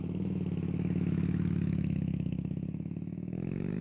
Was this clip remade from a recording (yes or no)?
yes